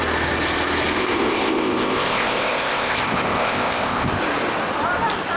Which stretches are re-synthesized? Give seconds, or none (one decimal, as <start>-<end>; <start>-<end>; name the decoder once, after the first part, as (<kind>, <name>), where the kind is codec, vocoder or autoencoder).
1.0-4.2 (codec, ZipCodec)